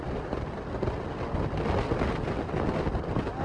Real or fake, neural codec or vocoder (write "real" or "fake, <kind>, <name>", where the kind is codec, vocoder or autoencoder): real